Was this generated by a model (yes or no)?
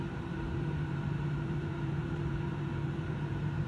yes